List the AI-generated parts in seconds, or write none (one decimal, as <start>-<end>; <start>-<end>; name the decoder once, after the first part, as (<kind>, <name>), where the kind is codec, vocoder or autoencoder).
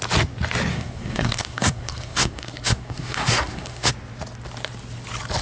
0.7-3.9 (codec, SNAC)